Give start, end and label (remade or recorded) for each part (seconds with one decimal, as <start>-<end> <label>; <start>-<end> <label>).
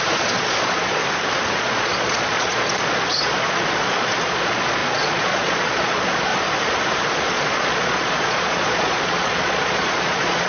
0.0-1.0 remade; 1.0-1.6 recorded; 1.6-6.3 remade; 6.3-7.3 recorded; 7.3-10.5 remade